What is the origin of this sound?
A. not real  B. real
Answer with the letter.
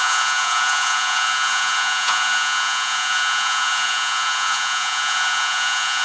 A